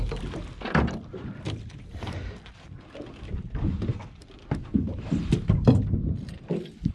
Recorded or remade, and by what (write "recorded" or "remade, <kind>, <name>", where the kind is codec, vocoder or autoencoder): recorded